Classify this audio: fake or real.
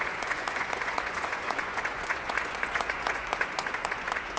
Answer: fake